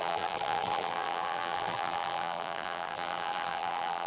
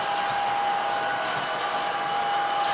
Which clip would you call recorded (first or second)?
second